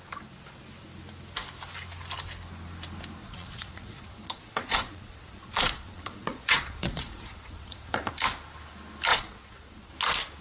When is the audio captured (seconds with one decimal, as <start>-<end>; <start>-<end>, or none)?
0.0-3.2; 8.1-9.1; 9.9-10.4